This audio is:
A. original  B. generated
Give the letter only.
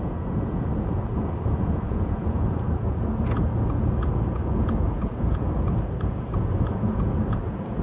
B